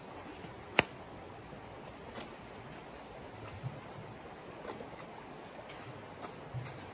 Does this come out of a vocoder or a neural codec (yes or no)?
no